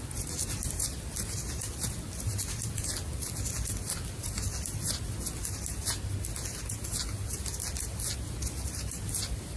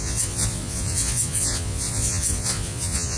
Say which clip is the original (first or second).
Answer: first